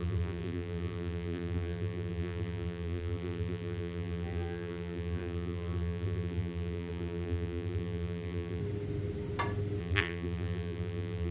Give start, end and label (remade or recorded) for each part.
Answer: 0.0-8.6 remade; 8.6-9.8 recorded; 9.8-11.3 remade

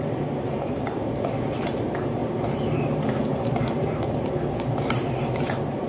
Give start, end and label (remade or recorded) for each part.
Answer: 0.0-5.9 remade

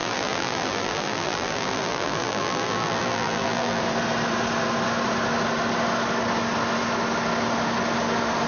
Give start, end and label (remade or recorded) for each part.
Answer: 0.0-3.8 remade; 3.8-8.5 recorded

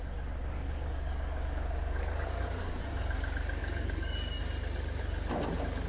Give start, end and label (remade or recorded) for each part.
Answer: 0.0-0.4 recorded; 0.4-2.8 remade; 2.8-3.6 recorded; 3.6-4.4 remade; 4.4-5.9 recorded